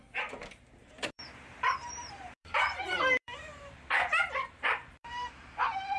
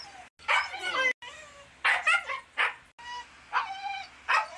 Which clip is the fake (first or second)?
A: first